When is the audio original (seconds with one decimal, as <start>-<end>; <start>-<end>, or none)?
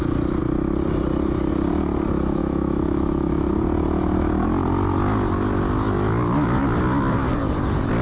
0.0-2.4; 3.5-8.0